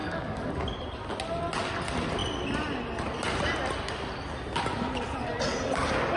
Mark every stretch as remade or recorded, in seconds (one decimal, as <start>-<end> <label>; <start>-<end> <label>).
0.0-0.5 remade; 0.5-6.2 recorded